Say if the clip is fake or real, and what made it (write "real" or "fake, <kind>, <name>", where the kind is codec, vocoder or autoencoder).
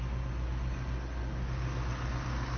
real